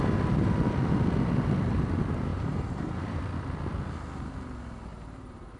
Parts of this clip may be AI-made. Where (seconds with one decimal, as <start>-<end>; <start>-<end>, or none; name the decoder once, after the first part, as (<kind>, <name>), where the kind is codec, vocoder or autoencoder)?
2.3-3.2 (vocoder, BigVGAN v2); 4.9-5.6